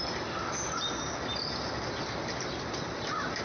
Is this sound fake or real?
real